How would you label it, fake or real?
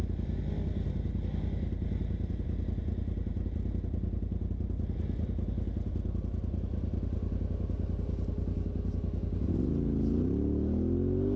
real